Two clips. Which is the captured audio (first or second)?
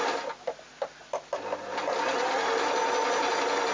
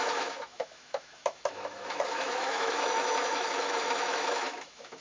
first